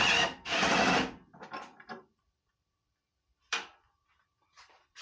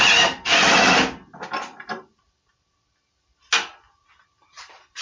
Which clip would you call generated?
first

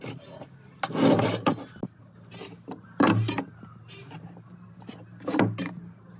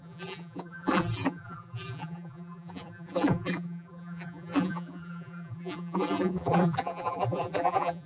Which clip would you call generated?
second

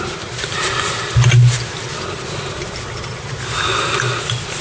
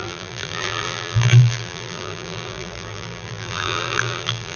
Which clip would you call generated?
second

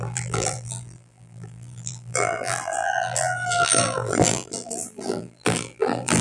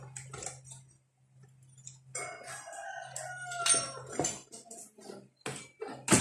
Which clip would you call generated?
first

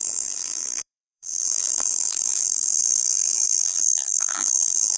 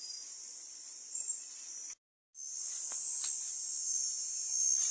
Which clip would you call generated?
first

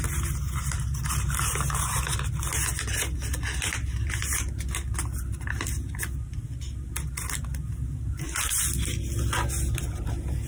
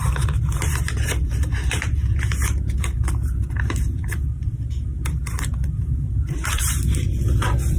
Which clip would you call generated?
second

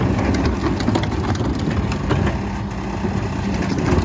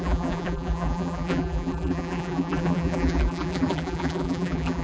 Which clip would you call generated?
second